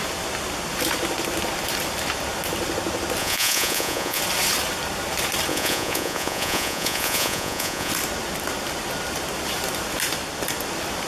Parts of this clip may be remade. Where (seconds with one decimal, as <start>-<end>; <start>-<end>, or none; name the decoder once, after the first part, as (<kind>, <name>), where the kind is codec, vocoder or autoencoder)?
3.2-4.2 (vocoder, Vocos); 5.5-7.9